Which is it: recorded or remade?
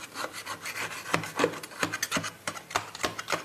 recorded